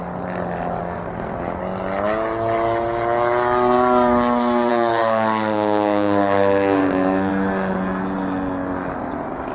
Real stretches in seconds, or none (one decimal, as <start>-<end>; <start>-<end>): 0.0-0.8; 1.6-4.7; 7.3-9.5